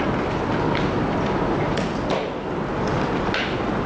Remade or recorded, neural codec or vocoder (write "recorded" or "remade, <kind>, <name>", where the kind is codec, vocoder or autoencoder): recorded